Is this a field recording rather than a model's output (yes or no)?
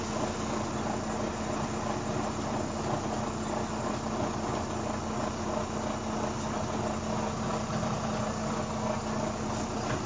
yes